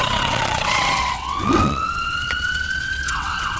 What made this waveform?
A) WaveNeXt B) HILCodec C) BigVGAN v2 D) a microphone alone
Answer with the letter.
A